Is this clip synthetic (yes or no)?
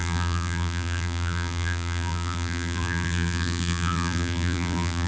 yes